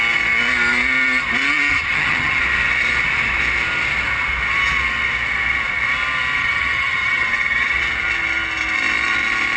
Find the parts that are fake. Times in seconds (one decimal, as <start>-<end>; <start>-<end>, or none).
1.7-2.4; 6.4-7.3